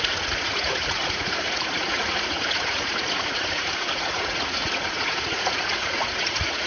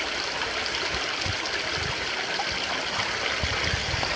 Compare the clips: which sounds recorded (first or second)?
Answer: second